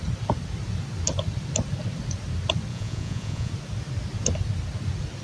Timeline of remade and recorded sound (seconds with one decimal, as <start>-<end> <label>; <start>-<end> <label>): 0.0-2.7 recorded; 2.7-3.5 remade; 3.5-5.2 recorded